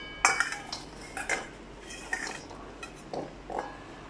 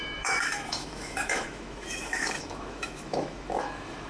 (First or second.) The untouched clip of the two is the first